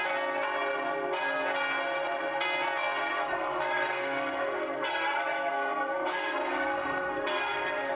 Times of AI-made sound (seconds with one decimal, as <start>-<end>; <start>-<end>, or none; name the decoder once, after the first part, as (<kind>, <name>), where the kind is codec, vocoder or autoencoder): 3.2-7.9 (codec, SNAC)